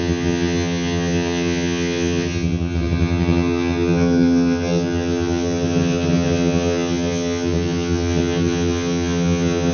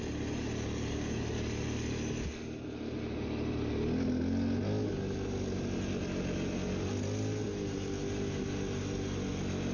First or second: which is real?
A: second